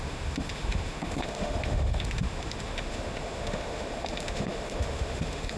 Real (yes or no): no